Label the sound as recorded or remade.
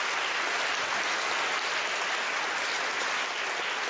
recorded